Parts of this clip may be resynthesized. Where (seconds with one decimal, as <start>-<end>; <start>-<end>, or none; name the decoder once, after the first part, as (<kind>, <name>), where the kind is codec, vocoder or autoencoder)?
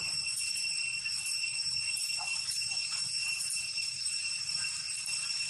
2.0-5.5 (vocoder, BigVGAN v2)